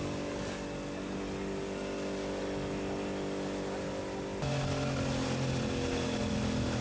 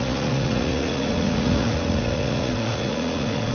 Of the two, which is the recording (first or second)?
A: first